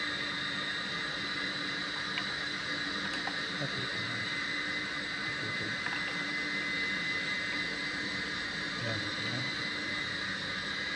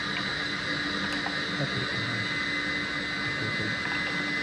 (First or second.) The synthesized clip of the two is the first